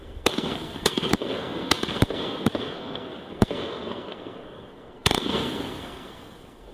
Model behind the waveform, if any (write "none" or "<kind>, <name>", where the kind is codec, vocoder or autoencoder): codec, SNAC